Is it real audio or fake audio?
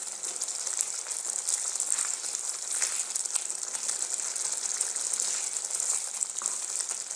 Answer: real